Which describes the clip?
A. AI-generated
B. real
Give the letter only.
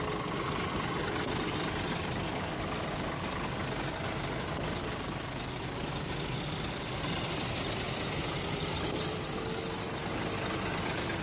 B